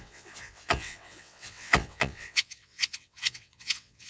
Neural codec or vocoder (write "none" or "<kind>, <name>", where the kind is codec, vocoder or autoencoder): vocoder, WaveNeXt